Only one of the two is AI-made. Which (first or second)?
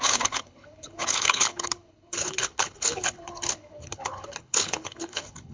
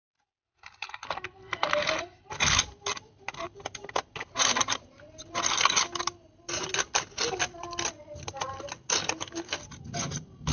first